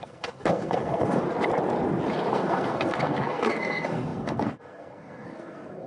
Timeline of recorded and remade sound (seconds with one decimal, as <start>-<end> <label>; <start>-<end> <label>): 0.0-1.2 remade; 1.2-2.3 recorded; 2.3-5.9 remade